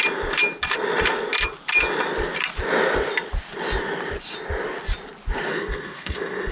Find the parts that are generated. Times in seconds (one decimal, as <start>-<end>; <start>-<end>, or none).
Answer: 5.5-6.5